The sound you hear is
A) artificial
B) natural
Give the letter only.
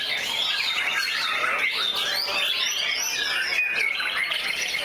B